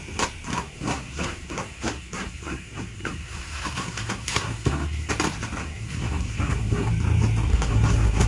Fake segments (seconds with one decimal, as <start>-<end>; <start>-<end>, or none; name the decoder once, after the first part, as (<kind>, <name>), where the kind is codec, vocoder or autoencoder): 0.5-5.1 (codec, SNAC); 5.6-6.9; 7.5-8.3